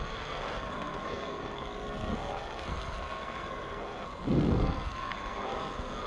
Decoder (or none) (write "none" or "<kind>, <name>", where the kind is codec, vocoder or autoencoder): codec, SNAC